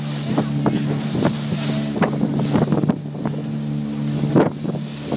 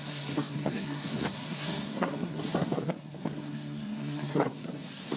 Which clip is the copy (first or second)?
second